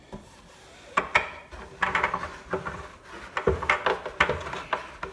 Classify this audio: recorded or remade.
recorded